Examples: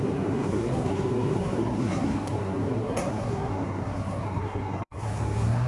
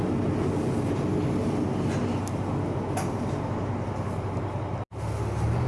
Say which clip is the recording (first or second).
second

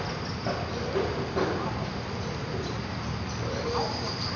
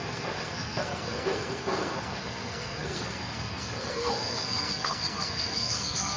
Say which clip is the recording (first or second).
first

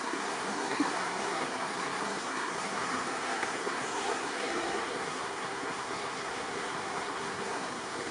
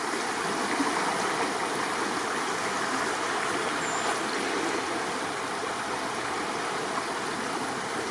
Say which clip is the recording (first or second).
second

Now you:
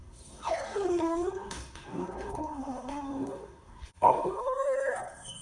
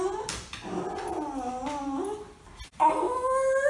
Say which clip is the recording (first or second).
second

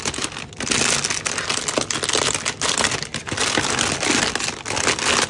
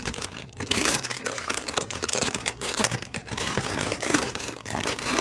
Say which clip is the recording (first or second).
first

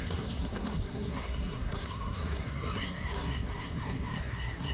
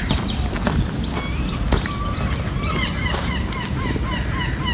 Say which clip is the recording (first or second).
second